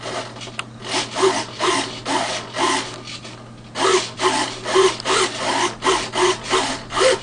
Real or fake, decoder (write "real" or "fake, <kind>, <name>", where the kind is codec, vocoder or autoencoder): real